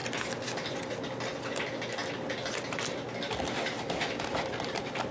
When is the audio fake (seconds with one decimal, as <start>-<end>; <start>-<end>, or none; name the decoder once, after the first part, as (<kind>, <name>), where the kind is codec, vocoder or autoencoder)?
none